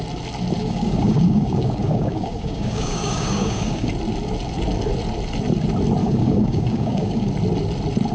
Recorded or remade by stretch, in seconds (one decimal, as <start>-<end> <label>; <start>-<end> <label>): 0.0-0.6 recorded; 0.6-3.9 remade; 3.9-6.0 recorded; 6.0-7.3 remade; 7.3-8.1 recorded